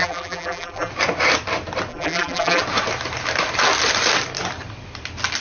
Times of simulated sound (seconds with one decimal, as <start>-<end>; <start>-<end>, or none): 0.0-0.9; 1.9-2.6